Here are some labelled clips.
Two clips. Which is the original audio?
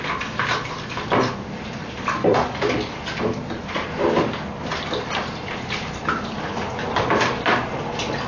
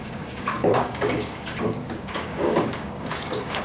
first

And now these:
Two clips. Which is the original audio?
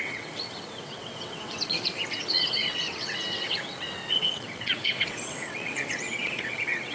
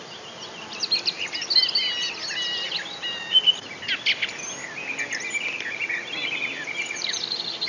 second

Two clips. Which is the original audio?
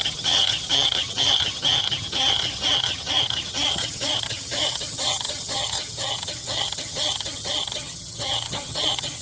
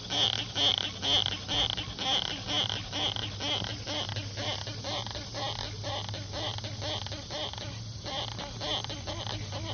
second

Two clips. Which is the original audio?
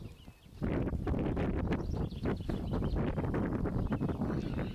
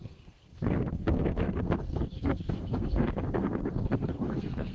first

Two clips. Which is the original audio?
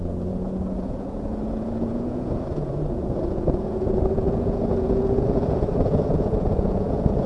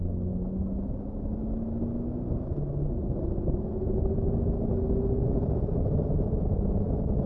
second